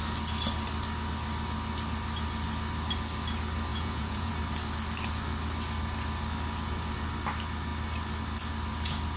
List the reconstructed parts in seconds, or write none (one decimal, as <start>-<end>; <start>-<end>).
3.7-4.3